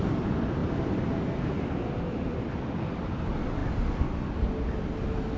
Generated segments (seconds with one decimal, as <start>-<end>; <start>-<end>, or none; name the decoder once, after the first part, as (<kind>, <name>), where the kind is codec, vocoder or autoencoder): none